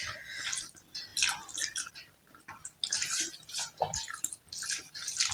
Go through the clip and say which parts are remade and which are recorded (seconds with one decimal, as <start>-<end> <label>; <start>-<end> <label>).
0.0-3.0 recorded; 3.0-4.4 remade; 4.4-5.3 recorded